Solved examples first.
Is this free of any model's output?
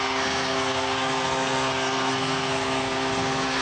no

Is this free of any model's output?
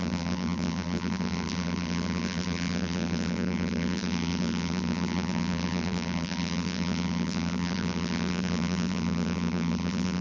no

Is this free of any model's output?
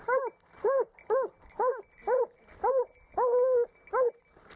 yes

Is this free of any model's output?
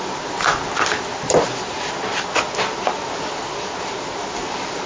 yes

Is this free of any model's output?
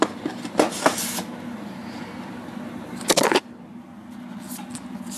yes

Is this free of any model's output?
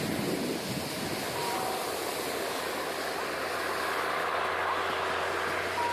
yes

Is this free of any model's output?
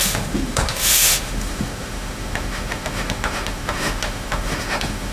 no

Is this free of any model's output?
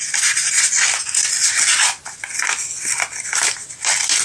yes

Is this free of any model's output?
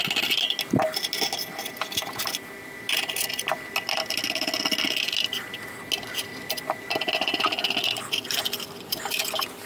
yes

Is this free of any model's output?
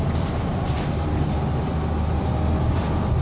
yes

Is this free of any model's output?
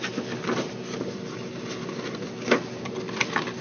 yes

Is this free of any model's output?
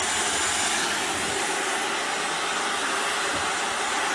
yes